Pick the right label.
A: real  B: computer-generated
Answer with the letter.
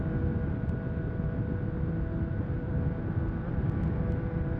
A